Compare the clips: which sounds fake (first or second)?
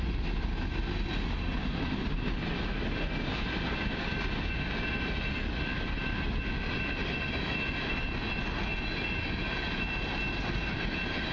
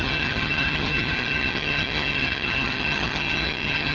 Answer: second